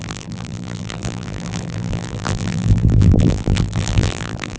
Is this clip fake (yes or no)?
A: yes